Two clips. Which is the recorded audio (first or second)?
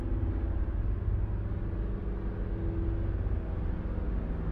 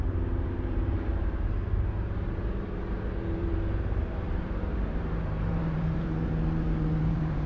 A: first